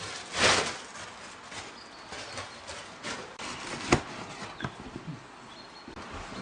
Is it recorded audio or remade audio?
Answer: recorded